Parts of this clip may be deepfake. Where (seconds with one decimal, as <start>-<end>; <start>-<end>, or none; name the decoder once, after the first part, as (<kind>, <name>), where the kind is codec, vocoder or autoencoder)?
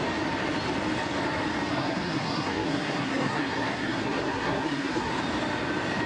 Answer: 1.7-5.1 (codec, SNAC)